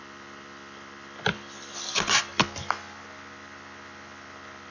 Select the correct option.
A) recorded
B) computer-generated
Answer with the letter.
A